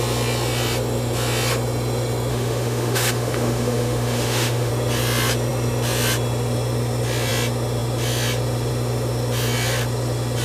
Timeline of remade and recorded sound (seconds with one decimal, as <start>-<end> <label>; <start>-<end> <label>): 0.0-2.3 recorded; 2.3-4.7 remade; 4.7-10.4 recorded